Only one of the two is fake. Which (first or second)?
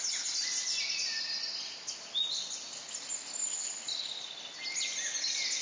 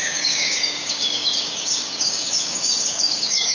second